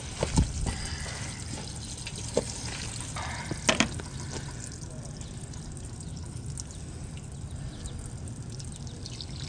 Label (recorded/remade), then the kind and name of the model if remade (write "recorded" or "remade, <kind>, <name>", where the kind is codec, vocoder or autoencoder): recorded